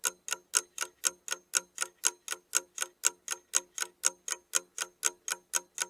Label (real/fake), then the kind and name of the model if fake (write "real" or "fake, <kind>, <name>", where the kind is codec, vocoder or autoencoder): real